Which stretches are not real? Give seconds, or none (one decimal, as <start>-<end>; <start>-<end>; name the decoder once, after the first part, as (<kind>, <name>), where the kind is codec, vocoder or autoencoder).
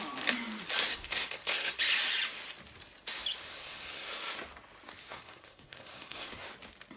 0.9-1.8 (codec, SNAC); 3.5-4.1; 5.0-6.4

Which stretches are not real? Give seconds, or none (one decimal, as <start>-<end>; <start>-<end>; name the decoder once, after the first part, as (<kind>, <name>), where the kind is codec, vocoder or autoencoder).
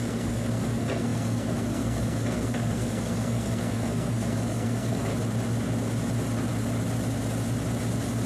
0.0-5.1 (codec, SNAC)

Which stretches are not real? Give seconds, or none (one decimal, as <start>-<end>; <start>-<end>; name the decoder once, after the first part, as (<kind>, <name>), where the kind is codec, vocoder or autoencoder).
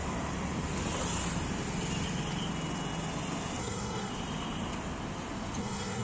3.6-4.1 (codec, SNAC); 5.6-6.0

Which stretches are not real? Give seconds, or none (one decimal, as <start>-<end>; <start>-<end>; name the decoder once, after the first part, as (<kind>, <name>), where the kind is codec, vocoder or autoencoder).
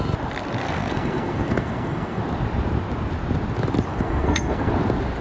0.6-2.2 (codec, SNAC); 3.9-4.7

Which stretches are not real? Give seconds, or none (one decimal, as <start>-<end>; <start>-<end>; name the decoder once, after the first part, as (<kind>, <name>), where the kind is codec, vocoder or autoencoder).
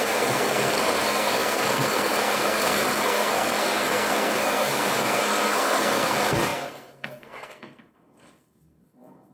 0.0-9.3 (codec, SNAC)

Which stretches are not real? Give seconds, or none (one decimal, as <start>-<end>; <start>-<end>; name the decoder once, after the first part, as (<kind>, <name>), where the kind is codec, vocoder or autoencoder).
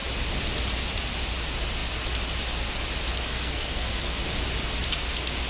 3.1-4.1 (codec, SNAC)